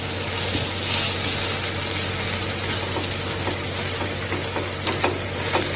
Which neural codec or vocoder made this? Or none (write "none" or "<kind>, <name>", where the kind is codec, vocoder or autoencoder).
none